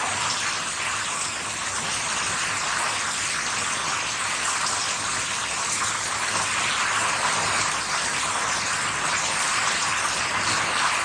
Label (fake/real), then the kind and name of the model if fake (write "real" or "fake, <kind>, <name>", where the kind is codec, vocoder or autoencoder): real